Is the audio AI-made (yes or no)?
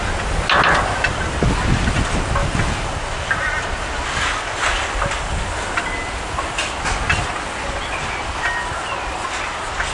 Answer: no